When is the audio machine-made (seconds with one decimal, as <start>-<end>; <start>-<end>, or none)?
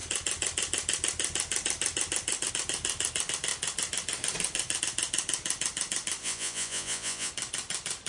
6.2-7.3